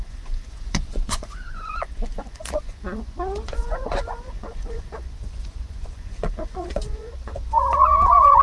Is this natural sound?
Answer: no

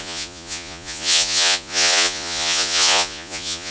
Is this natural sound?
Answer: no